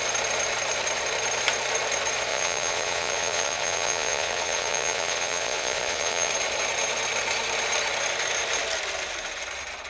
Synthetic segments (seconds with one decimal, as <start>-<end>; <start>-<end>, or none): 2.3-6.3